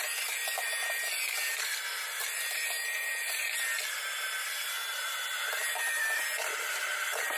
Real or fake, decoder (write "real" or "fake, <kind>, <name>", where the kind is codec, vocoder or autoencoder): real